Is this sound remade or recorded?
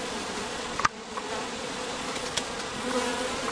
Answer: remade